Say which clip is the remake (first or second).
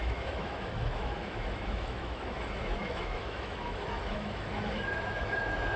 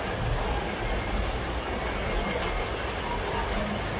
first